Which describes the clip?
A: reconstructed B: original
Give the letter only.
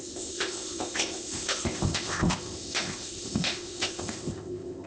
A